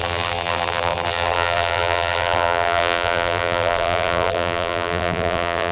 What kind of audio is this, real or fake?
fake